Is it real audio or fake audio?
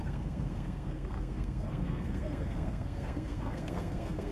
fake